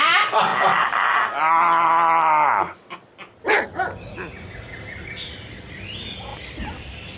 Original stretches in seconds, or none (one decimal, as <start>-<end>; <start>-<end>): 0.0-7.2